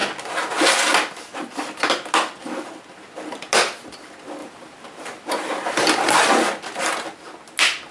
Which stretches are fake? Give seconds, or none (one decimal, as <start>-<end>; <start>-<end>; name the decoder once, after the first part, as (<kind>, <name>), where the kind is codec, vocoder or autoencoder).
4.4-5.3 (vocoder, BigVGAN v2)